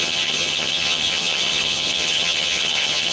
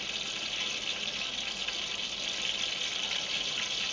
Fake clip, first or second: first